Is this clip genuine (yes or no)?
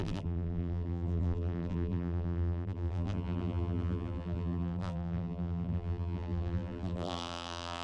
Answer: no